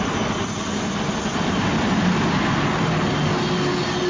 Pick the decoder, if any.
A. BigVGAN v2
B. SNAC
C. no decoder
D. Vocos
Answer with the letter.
C